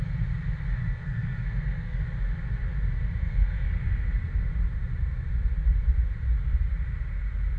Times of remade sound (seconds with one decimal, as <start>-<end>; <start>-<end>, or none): 0.8-2.0; 3.2-3.7